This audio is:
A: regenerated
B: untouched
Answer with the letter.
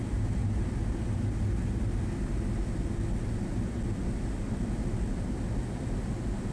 B